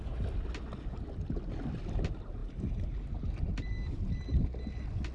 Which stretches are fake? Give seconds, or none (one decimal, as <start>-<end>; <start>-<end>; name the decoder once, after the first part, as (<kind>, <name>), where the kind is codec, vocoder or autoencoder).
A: none